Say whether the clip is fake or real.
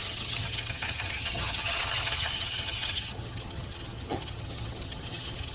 fake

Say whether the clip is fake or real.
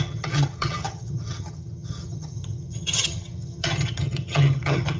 fake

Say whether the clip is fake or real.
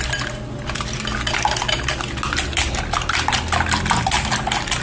real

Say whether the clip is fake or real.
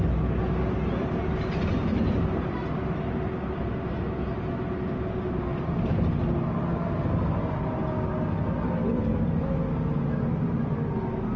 real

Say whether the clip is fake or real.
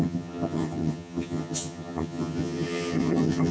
fake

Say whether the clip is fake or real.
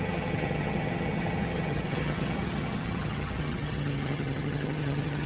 fake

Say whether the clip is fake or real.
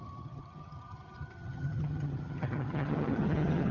fake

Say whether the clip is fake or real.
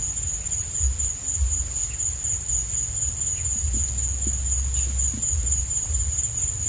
real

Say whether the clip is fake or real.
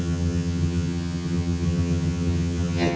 fake